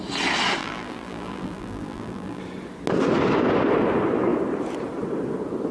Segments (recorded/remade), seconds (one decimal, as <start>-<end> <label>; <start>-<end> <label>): 0.0-0.6 recorded; 0.6-2.4 remade; 2.4-5.7 recorded